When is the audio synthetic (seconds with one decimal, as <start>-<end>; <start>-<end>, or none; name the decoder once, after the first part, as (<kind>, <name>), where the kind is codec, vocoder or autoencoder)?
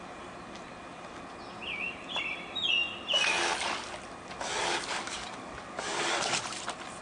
4.6-6.3 (codec, DAC)